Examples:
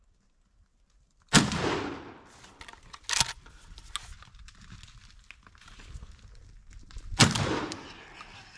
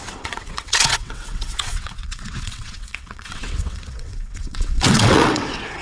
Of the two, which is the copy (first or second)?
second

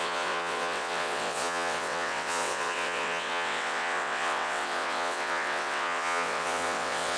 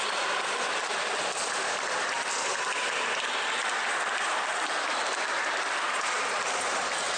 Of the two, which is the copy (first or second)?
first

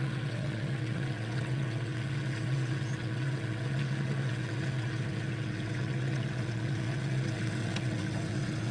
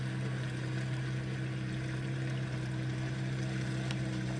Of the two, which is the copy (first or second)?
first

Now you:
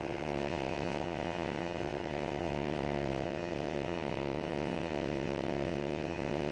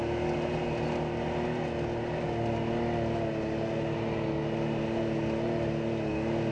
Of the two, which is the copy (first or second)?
first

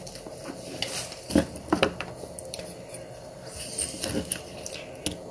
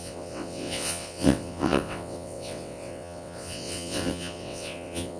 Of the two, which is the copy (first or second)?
second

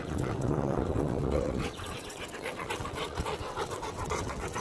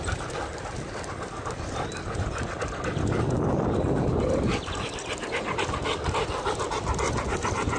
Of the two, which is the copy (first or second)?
first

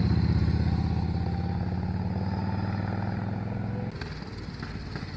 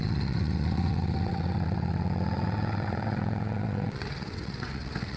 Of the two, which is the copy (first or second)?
second